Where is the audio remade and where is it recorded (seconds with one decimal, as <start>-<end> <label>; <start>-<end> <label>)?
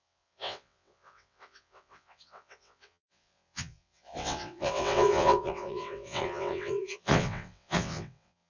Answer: 0.0-8.5 remade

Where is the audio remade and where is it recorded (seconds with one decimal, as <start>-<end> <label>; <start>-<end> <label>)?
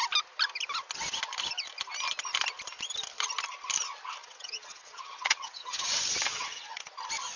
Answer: 0.0-4.2 recorded; 4.2-6.9 remade; 6.9-7.4 recorded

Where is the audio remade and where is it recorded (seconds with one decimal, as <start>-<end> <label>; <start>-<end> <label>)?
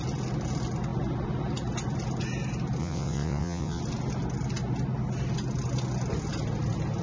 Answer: 0.0-2.8 recorded; 2.8-3.8 remade; 3.8-7.0 recorded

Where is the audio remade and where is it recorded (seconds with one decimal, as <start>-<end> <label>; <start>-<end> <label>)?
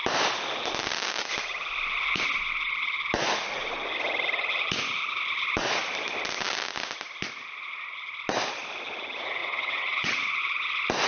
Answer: 0.0-9.4 recorded; 9.4-10.4 remade; 10.4-11.1 recorded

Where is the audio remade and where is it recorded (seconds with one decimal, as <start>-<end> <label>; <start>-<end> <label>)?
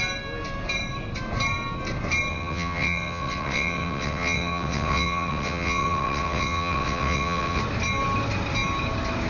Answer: 0.0-2.3 recorded; 2.3-7.6 remade; 7.6-9.3 recorded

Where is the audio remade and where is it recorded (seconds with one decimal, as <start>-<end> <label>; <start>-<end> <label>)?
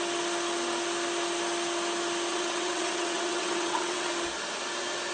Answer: 0.0-2.3 recorded; 2.3-4.1 remade; 4.1-5.1 recorded